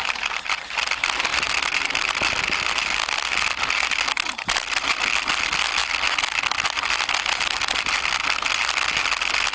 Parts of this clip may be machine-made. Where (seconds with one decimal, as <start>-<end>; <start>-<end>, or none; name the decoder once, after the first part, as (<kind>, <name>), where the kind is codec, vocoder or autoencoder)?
none